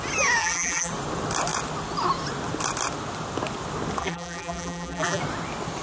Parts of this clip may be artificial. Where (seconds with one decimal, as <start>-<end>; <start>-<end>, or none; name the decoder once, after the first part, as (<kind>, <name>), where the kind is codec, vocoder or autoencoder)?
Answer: 0.4-0.9 (vocoder, BigVGAN v2); 4.0-5.2